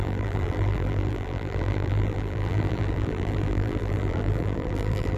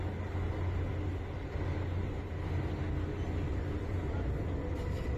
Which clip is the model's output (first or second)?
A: first